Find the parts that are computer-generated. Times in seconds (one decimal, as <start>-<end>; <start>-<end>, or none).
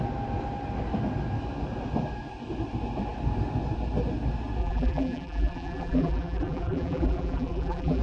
4.6-8.0